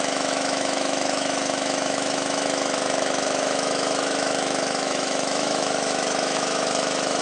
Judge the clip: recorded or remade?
remade